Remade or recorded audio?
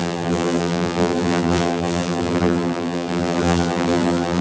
remade